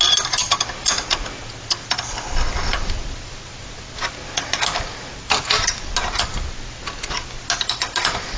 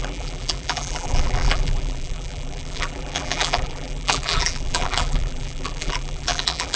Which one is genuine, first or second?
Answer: first